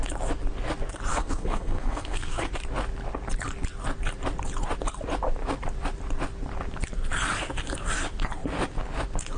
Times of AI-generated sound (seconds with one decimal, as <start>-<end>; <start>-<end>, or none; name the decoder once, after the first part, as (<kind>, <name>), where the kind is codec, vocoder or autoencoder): 1.1-2.5 (codec, SNAC)